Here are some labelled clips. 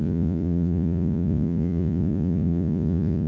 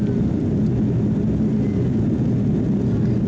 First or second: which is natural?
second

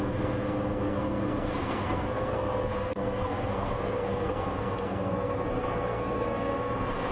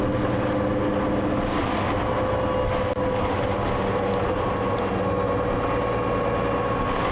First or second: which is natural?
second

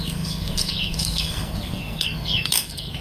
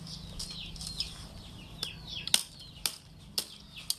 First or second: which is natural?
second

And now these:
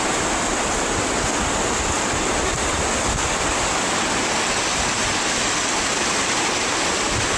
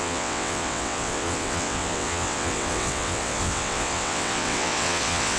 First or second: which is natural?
first